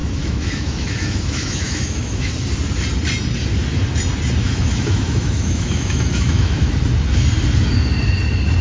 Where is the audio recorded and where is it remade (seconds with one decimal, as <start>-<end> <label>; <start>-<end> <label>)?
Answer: 0.0-2.3 remade; 2.3-4.4 recorded; 4.4-6.7 remade; 6.7-8.6 recorded